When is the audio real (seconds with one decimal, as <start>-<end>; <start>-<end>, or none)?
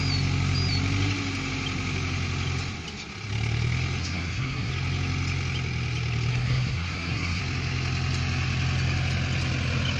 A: 0.0-4.0; 4.7-6.3; 7.4-10.0